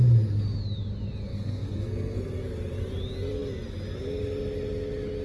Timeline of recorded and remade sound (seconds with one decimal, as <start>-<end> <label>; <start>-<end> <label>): 0.0-1.3 recorded; 1.3-2.2 remade; 2.2-5.2 recorded